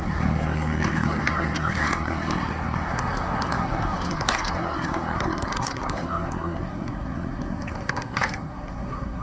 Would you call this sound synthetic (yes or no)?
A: yes